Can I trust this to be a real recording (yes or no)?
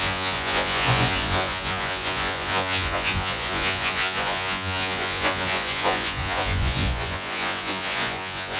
no